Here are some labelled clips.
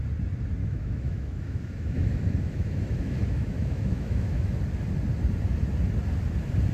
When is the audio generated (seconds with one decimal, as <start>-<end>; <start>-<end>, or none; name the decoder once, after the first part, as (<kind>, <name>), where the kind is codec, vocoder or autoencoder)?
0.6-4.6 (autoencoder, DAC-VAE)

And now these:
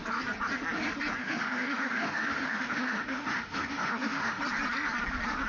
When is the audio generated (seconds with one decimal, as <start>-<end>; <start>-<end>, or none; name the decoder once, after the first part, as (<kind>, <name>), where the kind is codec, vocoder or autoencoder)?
1.2-4.4 (autoencoder, DAC-VAE)

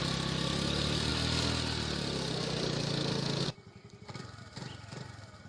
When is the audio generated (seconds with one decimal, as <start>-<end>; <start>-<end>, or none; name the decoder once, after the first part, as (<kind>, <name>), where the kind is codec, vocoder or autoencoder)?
none